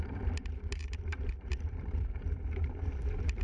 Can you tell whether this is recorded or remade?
remade